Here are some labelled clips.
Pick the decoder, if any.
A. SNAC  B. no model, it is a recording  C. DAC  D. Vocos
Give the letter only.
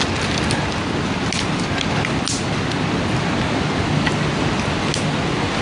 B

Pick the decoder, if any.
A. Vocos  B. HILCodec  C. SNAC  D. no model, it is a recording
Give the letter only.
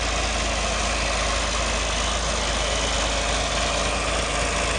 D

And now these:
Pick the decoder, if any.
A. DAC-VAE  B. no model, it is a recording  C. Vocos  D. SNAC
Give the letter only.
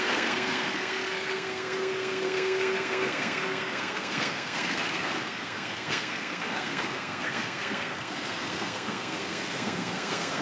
D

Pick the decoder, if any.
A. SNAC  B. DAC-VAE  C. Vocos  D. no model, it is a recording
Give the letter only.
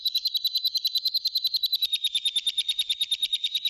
D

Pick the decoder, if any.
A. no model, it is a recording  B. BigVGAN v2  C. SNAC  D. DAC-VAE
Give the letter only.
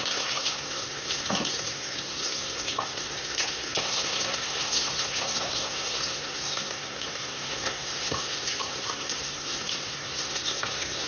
C